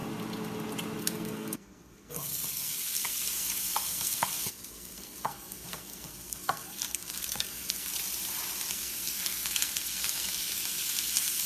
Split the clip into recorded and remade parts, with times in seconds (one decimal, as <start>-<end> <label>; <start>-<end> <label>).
0.0-1.0 recorded; 1.0-7.9 remade; 7.9-8.7 recorded; 8.7-11.5 remade